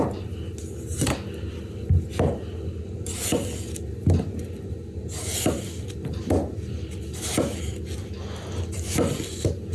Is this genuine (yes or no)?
yes